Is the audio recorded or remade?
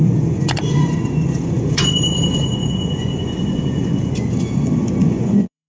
remade